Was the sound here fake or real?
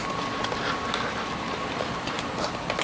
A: real